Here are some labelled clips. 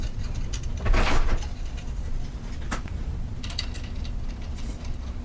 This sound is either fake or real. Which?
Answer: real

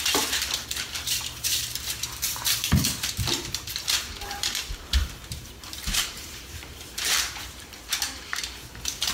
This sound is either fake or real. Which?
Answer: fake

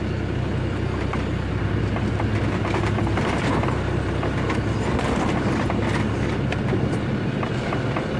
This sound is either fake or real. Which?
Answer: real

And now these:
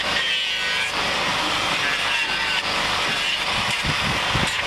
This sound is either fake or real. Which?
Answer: fake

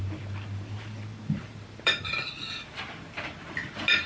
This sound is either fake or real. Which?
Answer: fake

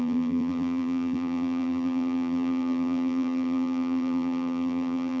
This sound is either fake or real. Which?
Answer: fake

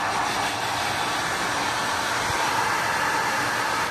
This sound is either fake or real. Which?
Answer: real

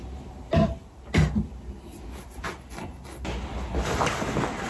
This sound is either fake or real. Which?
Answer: real